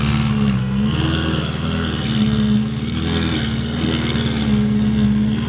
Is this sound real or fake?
fake